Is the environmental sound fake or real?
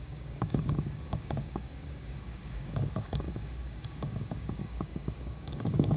fake